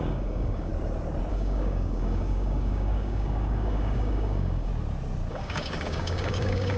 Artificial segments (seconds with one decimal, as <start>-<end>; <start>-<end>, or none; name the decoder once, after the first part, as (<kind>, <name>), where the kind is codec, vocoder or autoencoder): 0.0-0.7 (codec, DAC); 1.3-4.7; 5.3-6.8